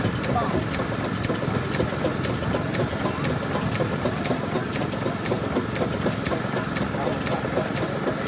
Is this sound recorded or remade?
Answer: remade